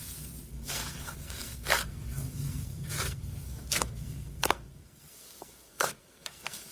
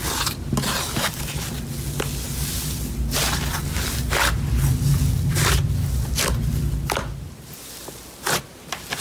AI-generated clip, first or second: first